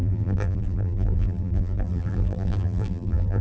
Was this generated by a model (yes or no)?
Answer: yes